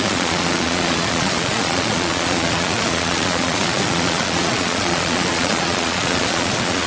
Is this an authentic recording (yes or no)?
no